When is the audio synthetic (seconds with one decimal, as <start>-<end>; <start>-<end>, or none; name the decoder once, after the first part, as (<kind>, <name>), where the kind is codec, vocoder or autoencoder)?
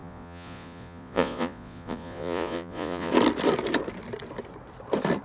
0.0-3.1 (vocoder, Vocos)